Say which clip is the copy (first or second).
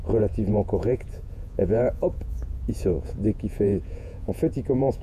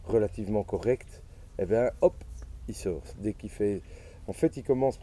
first